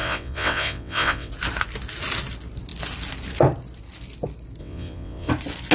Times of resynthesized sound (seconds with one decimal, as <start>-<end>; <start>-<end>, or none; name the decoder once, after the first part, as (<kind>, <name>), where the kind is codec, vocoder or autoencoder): 0.0-1.3 (vocoder, WaveNeXt); 4.6-5.3